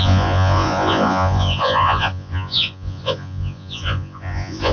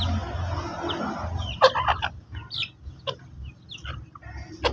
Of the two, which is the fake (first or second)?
first